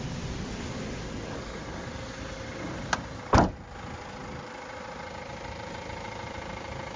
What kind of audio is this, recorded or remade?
recorded